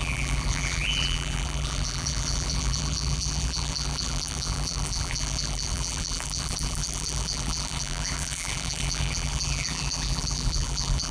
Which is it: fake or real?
fake